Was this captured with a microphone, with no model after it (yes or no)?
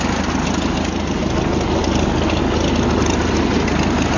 yes